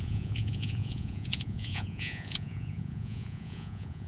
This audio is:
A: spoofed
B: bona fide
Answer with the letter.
A